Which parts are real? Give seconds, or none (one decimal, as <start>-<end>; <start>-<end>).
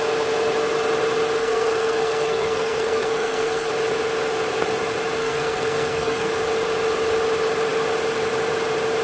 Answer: 0.0-1.4; 3.7-5.2; 6.3-9.0